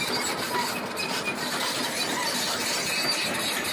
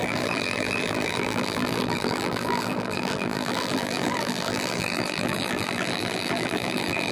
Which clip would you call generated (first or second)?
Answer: second